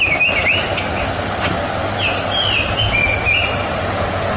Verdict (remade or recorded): recorded